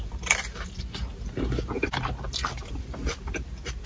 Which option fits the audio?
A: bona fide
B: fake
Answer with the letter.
A